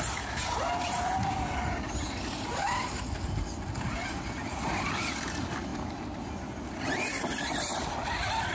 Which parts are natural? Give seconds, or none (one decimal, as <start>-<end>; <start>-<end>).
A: 0.0-8.5